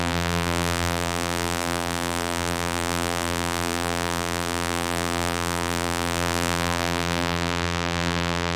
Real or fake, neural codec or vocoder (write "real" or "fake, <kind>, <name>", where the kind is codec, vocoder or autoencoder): fake, vocoder, BigVGAN v2